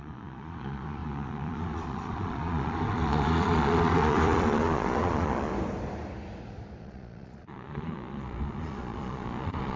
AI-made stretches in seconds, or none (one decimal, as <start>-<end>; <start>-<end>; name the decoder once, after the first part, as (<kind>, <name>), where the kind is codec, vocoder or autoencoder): 0.0-5.5 (vocoder, Vocos); 6.8-9.8